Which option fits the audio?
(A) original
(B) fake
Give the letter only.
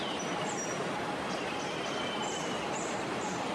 B